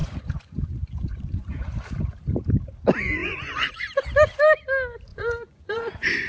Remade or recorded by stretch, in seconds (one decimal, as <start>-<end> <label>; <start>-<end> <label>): 0.0-1.7 remade; 1.7-3.2 recorded; 3.2-3.7 remade; 3.7-5.1 recorded; 5.1-6.3 remade